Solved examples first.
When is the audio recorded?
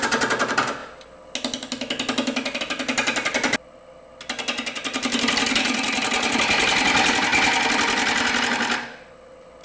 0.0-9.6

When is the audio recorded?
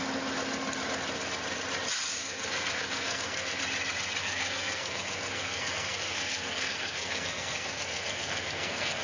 0.0-2.2; 3.6-4.2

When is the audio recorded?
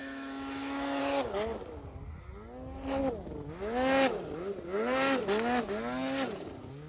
1.0-6.9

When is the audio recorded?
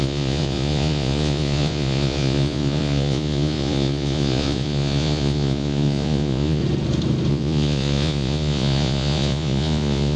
6.6-7.3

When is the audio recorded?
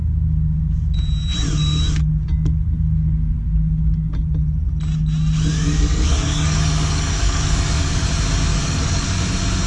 0.0-5.5; 8.1-8.5; 9.2-9.7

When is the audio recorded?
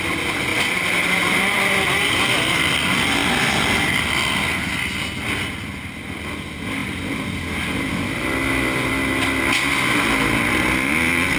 0.0-0.5; 2.6-11.4